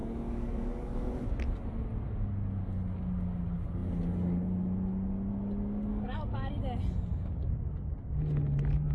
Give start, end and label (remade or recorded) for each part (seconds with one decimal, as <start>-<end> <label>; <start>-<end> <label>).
0.0-1.1 remade; 1.1-5.9 recorded; 5.9-6.5 remade; 6.5-8.9 recorded